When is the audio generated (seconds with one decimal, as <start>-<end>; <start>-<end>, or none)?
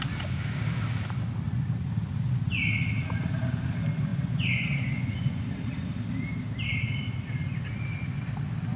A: 4.1-5.4